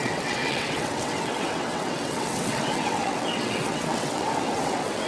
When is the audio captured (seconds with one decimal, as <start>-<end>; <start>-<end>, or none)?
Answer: none